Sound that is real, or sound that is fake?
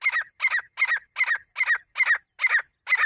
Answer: real